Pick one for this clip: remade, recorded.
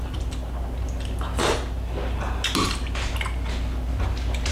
recorded